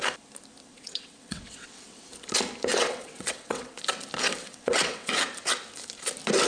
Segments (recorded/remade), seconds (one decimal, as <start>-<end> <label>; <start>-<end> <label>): 0.0-0.7 recorded; 0.7-2.0 remade; 2.0-2.7 recorded; 2.7-3.7 remade; 3.7-4.4 recorded; 4.4-5.1 remade; 5.1-6.5 recorded